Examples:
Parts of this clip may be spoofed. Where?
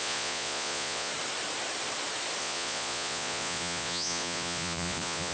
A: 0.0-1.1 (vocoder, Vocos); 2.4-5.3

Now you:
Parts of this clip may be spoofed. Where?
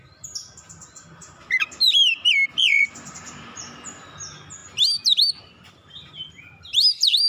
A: 1.2-3.6 (vocoder, BigVGAN v2)